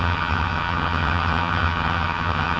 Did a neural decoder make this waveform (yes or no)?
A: yes